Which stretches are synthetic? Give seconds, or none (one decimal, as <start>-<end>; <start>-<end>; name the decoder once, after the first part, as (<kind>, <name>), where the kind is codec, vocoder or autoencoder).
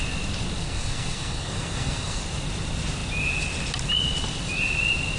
0.6-2.2 (codec, SNAC)